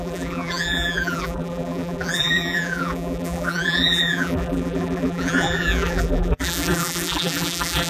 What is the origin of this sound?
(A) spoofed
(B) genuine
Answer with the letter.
A